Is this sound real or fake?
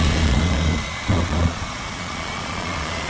fake